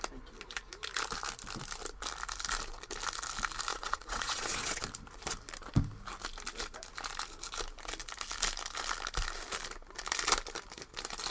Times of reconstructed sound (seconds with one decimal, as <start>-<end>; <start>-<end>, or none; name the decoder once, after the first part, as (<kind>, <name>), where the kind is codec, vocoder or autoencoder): 3.7-4.8 (vocoder, WaveNeXt)